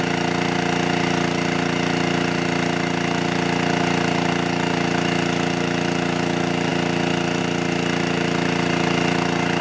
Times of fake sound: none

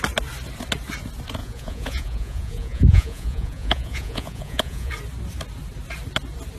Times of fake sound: 1.4-4.9